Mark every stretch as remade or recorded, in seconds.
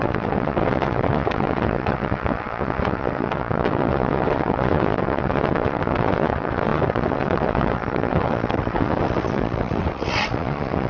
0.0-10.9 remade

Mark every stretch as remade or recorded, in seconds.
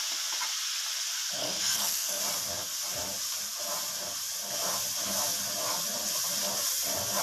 0.0-1.4 recorded; 1.4-2.2 remade; 2.2-7.2 recorded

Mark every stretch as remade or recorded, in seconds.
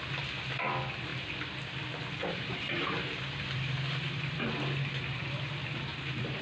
0.0-2.2 recorded; 2.2-5.0 remade; 5.0-5.9 recorded; 5.9-6.4 remade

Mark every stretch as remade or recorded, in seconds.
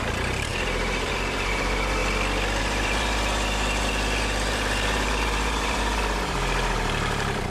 0.0-2.0 remade; 2.0-2.6 recorded; 2.6-7.5 remade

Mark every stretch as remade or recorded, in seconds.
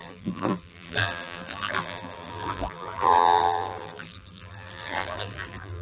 0.0-5.8 remade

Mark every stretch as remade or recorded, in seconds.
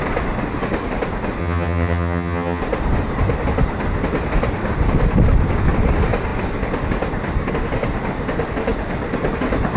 0.0-1.4 recorded; 1.4-2.6 remade; 2.6-9.8 recorded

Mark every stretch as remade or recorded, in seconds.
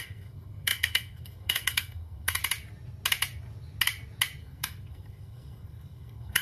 0.0-2.4 remade; 2.4-4.4 recorded; 4.4-6.4 remade